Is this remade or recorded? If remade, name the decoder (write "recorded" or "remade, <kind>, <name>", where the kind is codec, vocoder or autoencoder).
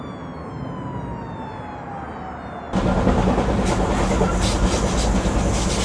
recorded